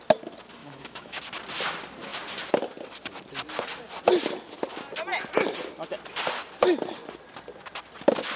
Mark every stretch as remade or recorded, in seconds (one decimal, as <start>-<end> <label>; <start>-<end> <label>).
0.0-0.6 recorded; 0.6-1.2 remade; 1.2-8.4 recorded